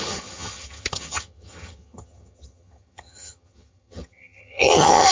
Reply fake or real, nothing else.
fake